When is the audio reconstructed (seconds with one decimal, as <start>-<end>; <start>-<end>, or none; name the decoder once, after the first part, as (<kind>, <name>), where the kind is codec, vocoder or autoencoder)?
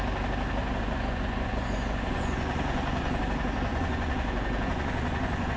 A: 0.6-3.2 (vocoder, Vocos); 3.7-5.6